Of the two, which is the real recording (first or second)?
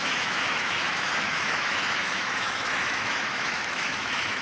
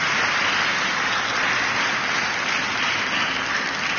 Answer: second